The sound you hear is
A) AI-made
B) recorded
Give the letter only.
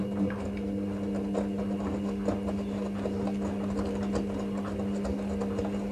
B